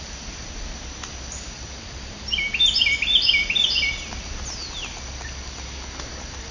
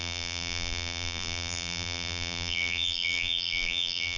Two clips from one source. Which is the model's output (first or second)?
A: second